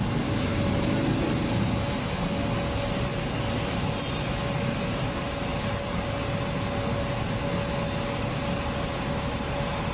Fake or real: real